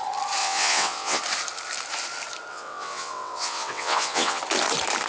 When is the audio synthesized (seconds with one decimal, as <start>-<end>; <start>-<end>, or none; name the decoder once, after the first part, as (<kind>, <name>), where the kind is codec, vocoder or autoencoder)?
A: 0.4-1.2 (vocoder, WaveNeXt); 2.5-4.4